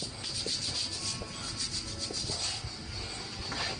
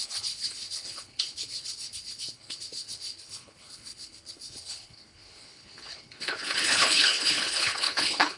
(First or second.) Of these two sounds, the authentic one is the first